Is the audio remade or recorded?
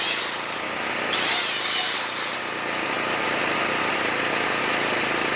recorded